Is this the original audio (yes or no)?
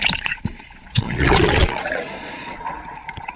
no